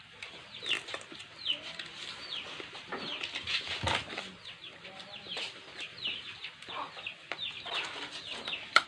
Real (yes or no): yes